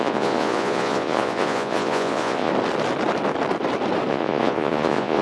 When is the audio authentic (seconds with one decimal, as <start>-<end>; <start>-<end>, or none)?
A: 2.5-4.1